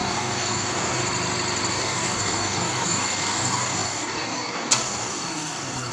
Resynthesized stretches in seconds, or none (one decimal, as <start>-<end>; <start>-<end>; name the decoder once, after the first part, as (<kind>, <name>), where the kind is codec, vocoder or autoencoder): 0.0-1.0 (codec, DAC); 1.7-5.9